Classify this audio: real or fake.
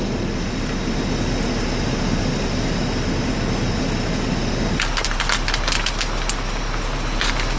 real